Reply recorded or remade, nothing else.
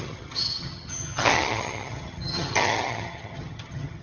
remade